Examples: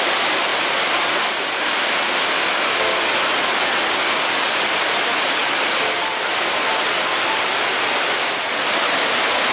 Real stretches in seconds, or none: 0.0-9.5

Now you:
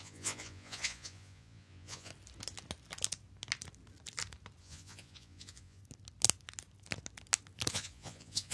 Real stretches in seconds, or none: 2.1-4.6; 5.8-7.7

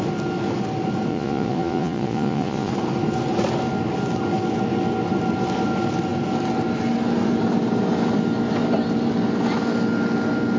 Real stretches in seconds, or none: 0.0-1.1; 2.7-10.6

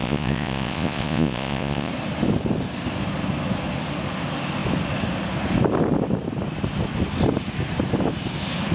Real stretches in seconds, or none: 1.9-8.7

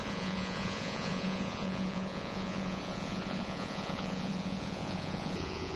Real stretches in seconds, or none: none

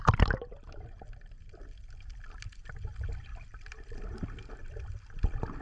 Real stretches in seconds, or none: 0.0-5.6